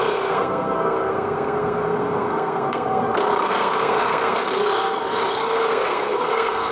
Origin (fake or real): fake